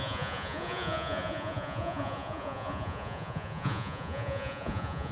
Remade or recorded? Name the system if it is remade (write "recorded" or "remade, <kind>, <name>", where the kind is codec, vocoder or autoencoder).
remade, vocoder, Vocos